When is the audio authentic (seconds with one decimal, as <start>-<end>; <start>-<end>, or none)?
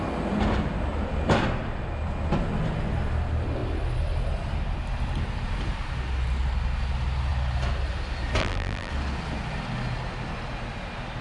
0.0-8.4; 8.9-11.2